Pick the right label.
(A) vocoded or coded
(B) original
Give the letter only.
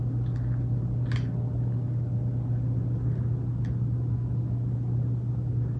B